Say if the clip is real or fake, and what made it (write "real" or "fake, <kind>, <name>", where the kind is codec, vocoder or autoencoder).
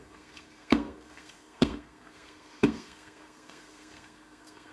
fake, codec, SNAC